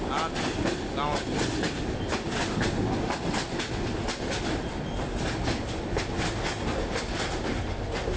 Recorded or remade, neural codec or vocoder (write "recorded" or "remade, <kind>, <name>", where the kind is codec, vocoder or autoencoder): recorded